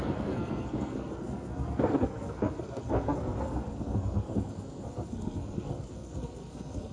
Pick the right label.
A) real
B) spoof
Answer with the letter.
B